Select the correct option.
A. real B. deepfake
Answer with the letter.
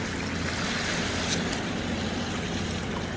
A